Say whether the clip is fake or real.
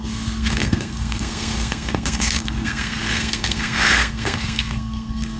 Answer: fake